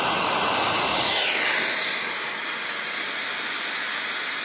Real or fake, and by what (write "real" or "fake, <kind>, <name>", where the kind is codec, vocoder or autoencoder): real